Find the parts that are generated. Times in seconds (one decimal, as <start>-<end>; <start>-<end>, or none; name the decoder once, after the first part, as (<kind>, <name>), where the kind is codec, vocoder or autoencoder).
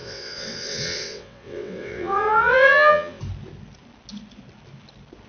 0.0-3.2 (vocoder, WaveNeXt)